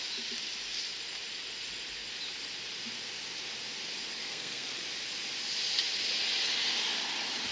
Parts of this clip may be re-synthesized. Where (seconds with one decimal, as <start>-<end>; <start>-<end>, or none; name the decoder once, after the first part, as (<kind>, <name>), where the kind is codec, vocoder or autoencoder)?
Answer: 4.2-4.8 (codec, SNAC)